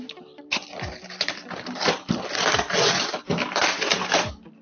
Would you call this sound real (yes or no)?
yes